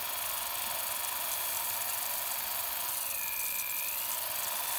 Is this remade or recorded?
recorded